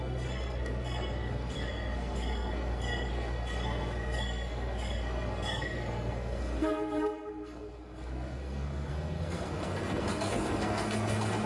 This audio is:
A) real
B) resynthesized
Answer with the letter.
B